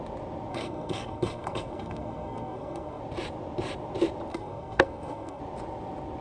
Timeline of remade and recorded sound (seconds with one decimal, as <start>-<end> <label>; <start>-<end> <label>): 0.0-0.5 recorded; 0.5-3.0 remade; 3.0-4.3 recorded; 4.3-5.4 remade; 5.4-6.2 recorded